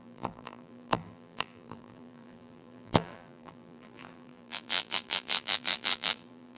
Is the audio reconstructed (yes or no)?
yes